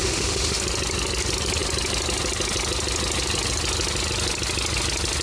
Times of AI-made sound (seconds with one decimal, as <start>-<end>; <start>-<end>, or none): 0.0-0.6